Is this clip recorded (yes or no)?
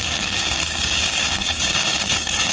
no